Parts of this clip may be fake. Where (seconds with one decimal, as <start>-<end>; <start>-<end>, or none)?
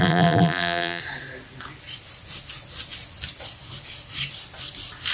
0.0-1.0